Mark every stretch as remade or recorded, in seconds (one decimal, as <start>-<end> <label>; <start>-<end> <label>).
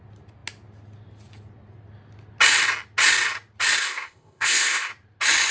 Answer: 0.0-3.8 recorded; 3.8-4.9 remade; 4.9-5.5 recorded